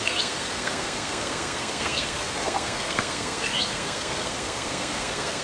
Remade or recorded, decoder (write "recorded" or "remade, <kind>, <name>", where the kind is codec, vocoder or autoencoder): remade, codec, SNAC